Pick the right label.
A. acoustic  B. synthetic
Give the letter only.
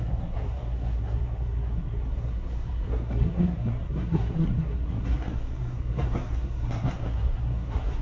B